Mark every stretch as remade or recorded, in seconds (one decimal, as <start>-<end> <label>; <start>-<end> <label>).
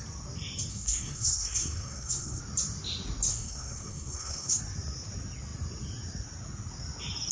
0.0-0.7 recorded; 0.7-2.4 remade; 2.4-3.3 recorded; 3.3-4.6 remade; 4.6-7.3 recorded